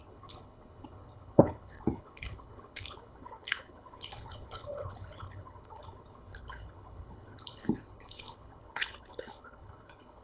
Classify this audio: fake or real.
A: fake